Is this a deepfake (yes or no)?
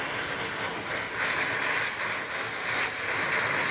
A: no